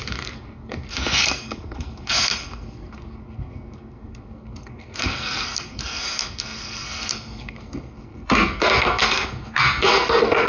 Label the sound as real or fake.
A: fake